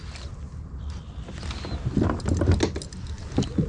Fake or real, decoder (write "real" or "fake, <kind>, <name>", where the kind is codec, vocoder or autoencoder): real